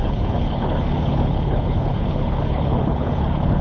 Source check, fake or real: fake